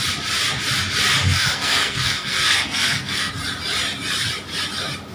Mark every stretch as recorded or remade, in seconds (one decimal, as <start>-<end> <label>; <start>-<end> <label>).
0.0-1.2 recorded; 1.2-3.3 remade; 3.3-5.1 recorded